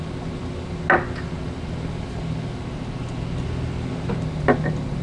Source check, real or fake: real